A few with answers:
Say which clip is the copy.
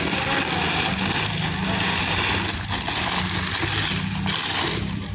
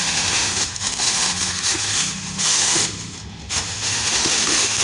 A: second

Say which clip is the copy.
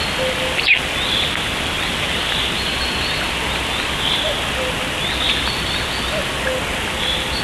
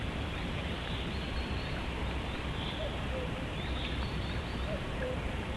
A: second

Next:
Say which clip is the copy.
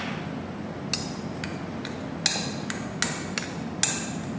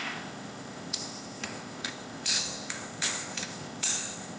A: second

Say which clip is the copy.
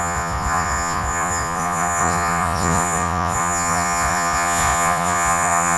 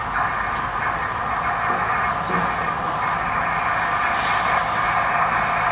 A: first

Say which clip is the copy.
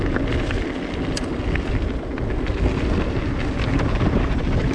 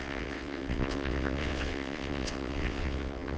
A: second